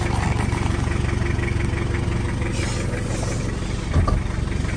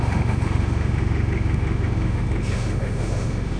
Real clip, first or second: first